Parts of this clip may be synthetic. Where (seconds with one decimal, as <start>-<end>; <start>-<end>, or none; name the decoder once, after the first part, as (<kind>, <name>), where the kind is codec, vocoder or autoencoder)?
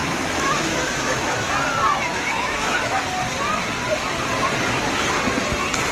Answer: 0.0-1.5 (autoencoder, DAC-VAE); 2.1-3.0